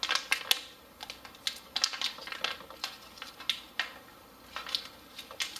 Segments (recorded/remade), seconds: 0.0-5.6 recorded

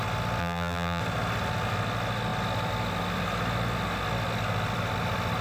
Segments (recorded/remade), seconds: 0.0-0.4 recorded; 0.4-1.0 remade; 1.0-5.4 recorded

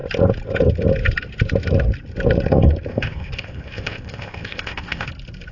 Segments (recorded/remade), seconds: 0.0-2.9 recorded; 2.9-5.1 remade; 5.1-5.5 recorded

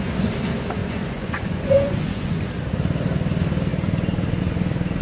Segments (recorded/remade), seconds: 0.0-0.8 recorded; 0.8-2.5 remade; 2.5-5.0 recorded

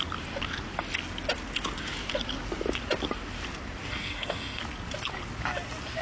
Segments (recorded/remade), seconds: 0.0-3.9 recorded; 3.9-4.6 remade; 4.6-6.0 recorded

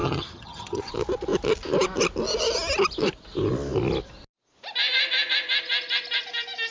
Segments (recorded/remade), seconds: 0.0-0.9 remade; 0.9-6.7 recorded

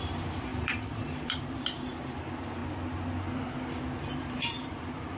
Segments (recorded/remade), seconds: 0.0-2.6 remade; 2.6-4.2 recorded; 4.2-5.2 remade